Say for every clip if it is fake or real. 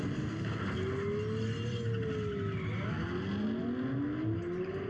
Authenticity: real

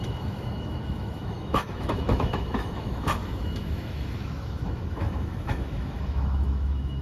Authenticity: fake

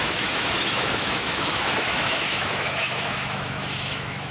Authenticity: fake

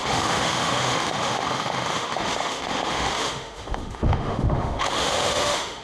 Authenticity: fake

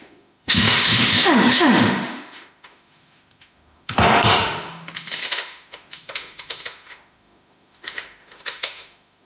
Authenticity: fake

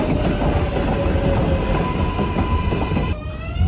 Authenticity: real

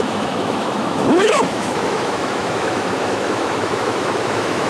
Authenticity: fake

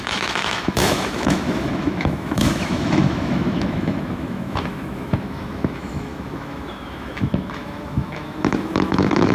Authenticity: fake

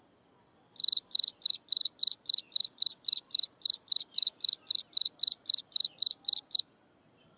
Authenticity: real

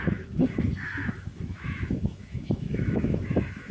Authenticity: fake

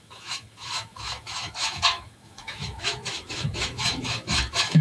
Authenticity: fake